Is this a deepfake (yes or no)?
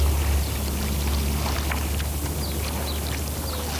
no